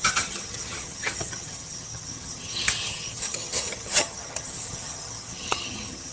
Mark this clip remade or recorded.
remade